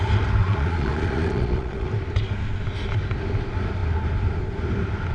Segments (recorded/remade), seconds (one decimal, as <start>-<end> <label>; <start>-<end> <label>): 0.0-0.4 recorded; 0.4-1.9 remade; 1.9-5.1 recorded